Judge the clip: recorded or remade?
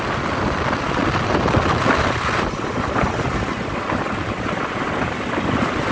recorded